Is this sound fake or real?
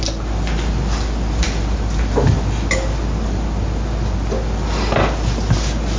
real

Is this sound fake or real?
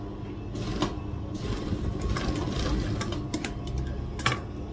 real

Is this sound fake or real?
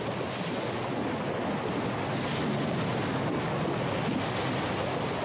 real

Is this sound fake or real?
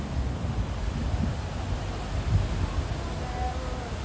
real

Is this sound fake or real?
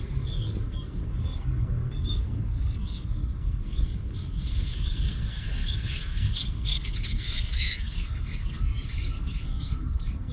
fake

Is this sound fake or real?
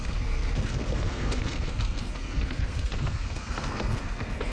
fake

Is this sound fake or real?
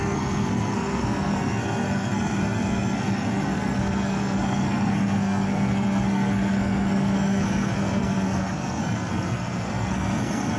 fake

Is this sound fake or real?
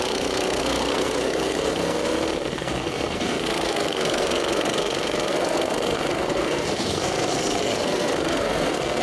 fake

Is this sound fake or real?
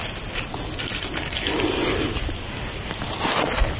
real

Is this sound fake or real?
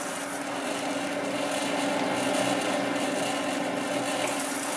real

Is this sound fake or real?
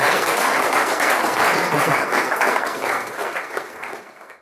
fake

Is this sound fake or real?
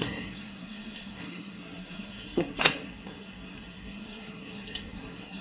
fake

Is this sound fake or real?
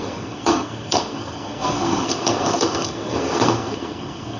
fake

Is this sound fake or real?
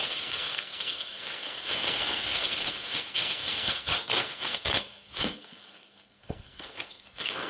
fake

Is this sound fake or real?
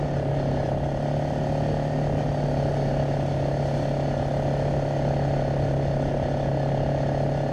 real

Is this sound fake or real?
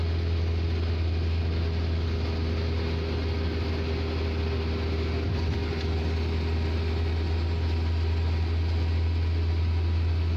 real